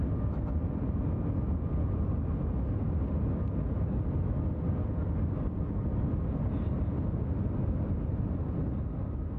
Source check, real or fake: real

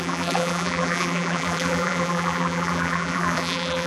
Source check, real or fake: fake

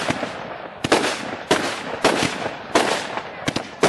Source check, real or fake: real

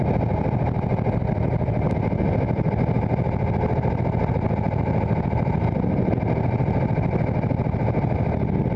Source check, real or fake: real